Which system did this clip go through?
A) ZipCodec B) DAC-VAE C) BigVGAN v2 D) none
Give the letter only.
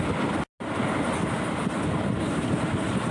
D